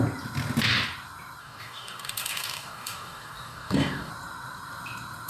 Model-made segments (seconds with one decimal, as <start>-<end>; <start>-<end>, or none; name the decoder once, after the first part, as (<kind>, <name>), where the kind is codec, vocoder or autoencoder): 1.4-4.1 (codec, DAC)

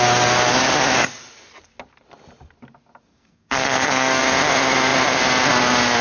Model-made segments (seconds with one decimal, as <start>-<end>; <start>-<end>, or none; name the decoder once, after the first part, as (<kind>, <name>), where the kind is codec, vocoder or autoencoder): 3.1-4.2 (codec, SNAC)

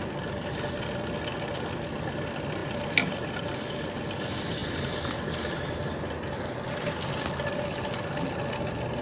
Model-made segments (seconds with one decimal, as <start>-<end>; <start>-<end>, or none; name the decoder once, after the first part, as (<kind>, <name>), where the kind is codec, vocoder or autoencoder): none

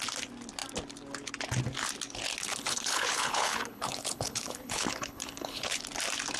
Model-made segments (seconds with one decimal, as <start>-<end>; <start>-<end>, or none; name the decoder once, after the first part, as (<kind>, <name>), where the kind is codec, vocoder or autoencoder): 2.4-5.8 (codec, HILCodec)

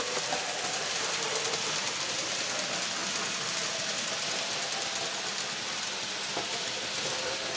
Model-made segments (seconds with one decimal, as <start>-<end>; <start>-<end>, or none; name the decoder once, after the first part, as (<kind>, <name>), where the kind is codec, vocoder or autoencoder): none

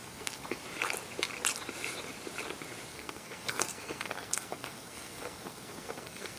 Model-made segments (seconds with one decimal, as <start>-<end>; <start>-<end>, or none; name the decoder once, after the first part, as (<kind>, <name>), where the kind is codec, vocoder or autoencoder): 0.0-0.6 (codec, SNAC); 2.9-6.4